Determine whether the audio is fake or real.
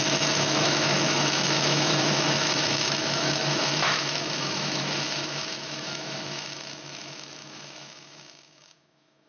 fake